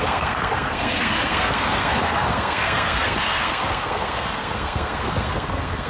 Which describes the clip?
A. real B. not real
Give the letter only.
B